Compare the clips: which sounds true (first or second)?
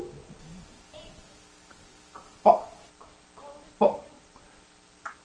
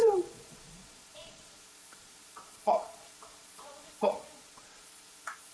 first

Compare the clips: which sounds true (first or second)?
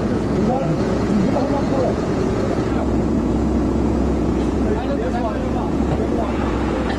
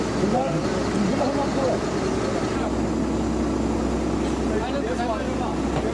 second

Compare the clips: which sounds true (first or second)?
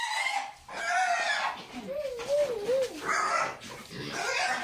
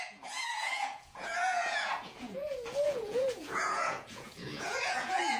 first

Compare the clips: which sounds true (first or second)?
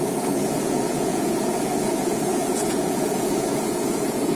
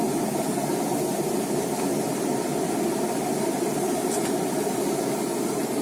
second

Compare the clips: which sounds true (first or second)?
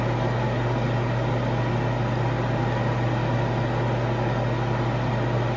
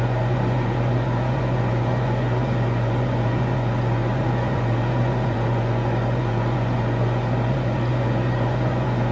first